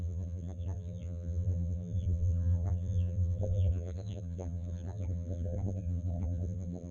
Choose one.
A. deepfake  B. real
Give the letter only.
A